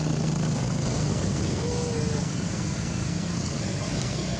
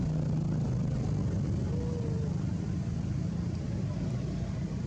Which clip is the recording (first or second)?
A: second